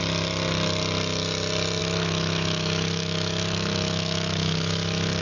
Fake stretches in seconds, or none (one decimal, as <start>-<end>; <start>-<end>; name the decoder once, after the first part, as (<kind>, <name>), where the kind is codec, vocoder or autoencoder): 1.8-5.2 (autoencoder, DAC-VAE)